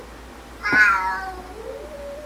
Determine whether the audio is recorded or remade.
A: recorded